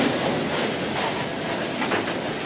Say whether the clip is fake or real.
real